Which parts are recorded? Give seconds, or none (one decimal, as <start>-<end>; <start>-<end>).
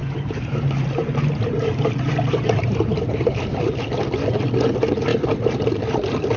3.8-6.4